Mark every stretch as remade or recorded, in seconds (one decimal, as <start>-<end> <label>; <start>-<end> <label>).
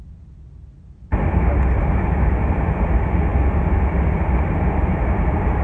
0.0-5.6 recorded